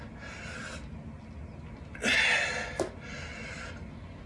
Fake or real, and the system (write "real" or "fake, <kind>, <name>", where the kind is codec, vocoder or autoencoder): real